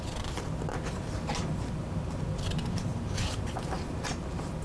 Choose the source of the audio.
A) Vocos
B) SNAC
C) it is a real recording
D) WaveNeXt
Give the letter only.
C